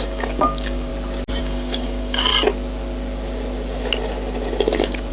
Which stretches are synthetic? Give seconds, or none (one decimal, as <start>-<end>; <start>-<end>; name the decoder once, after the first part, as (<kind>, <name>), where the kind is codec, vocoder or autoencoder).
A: 0.0-0.9 (codec, DAC); 1.4-2.3

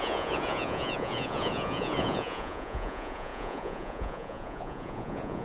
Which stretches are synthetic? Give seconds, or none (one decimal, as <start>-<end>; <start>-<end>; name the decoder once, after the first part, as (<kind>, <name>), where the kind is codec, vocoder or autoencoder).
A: 0.0-5.4 (vocoder, Vocos)